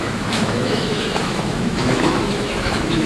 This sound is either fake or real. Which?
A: fake